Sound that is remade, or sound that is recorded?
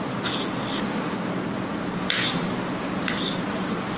recorded